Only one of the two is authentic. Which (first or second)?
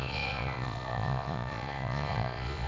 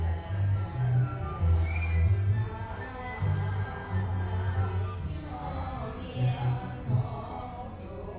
second